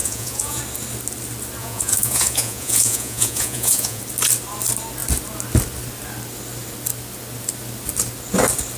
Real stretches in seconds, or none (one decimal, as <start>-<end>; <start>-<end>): 0.6-1.6; 4.0-8.8